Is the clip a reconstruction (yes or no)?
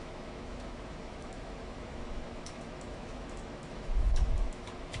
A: yes